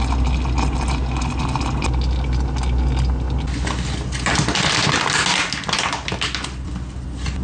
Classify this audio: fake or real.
real